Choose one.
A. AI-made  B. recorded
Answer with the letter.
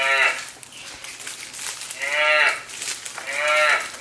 B